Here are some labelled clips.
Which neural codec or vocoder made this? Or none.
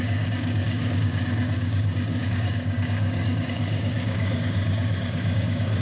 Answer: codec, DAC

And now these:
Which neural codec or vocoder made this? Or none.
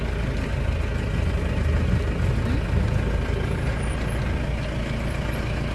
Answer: none